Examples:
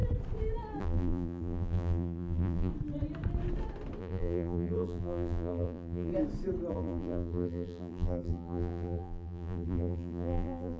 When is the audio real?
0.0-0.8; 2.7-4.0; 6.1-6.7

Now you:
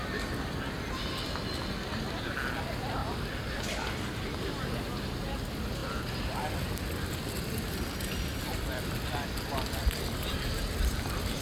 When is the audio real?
0.0-3.0; 4.5-5.8

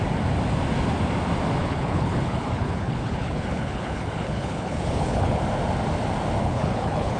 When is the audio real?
0.0-1.6; 5.4-6.4

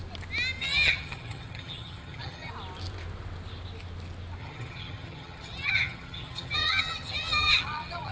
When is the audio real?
0.0-0.6; 2.5-4.4

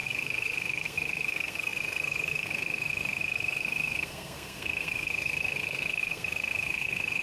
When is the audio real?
none